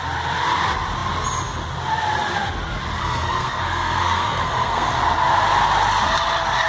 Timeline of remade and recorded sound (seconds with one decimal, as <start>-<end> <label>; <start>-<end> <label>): 0.0-3.0 recorded; 3.0-4.9 remade; 4.9-6.7 recorded